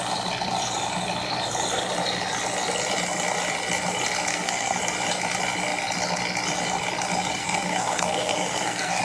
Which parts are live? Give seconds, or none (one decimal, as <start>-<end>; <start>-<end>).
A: 0.0-4.3; 4.8-7.4